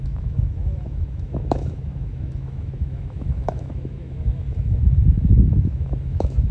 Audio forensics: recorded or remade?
remade